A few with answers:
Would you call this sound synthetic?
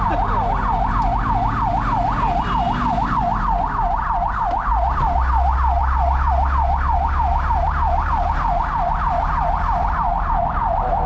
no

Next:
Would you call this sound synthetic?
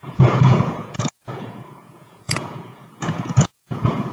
yes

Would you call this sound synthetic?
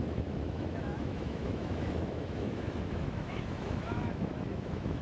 yes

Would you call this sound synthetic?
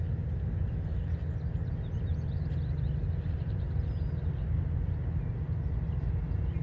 no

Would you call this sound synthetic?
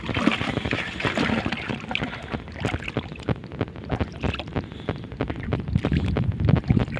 yes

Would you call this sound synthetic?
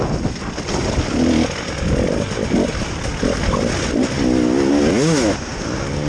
no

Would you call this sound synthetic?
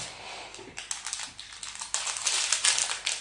no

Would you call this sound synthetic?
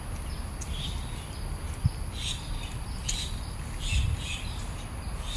no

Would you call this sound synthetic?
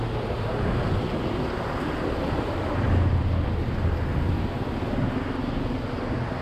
no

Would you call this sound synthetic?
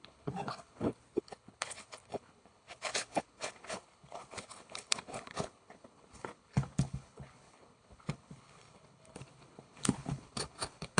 yes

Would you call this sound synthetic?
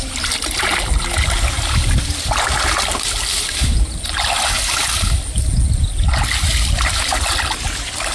no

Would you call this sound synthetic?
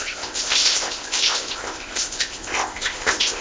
yes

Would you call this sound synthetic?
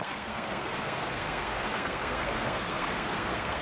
yes